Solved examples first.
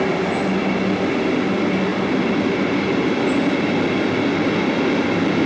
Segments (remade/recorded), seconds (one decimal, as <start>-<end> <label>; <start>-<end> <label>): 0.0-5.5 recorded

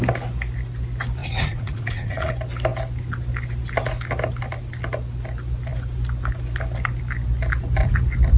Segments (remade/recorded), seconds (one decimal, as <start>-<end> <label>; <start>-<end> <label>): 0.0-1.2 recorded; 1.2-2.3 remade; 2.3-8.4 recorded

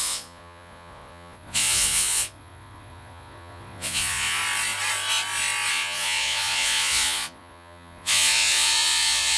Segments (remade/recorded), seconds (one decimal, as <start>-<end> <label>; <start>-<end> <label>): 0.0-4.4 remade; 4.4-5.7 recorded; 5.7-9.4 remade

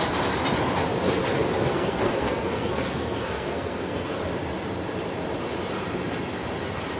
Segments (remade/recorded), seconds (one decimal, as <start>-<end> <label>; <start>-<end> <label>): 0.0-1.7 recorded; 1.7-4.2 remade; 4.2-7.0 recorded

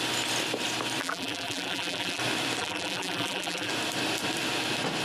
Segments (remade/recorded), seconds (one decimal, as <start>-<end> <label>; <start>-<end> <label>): 0.0-1.0 recorded; 1.0-2.2 remade; 2.2-2.6 recorded; 2.6-3.7 remade; 3.7-5.0 recorded